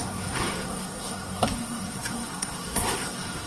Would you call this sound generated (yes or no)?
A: yes